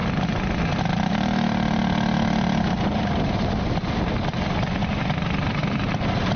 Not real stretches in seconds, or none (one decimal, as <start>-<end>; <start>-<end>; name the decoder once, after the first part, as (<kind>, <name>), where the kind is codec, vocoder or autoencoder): none